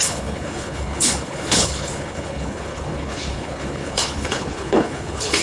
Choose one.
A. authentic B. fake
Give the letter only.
B